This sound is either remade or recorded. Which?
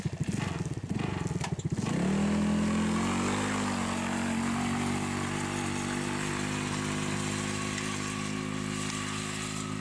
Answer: recorded